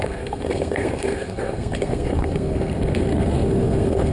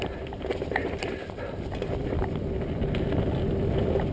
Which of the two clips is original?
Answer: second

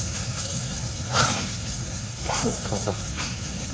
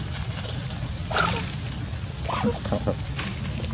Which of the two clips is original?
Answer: second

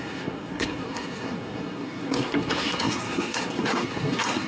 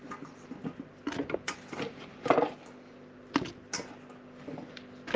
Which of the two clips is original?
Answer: second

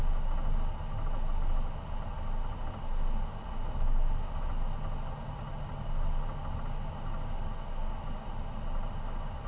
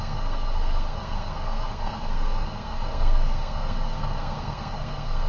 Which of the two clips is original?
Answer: first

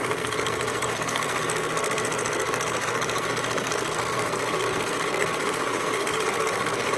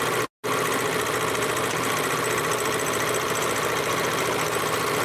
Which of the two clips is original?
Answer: second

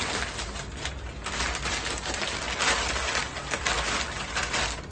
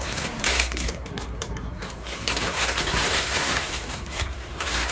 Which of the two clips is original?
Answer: first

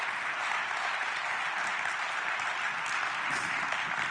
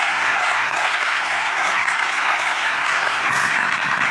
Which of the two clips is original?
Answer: first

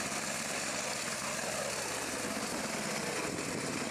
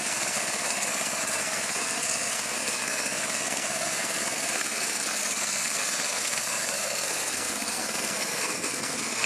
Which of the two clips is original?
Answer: first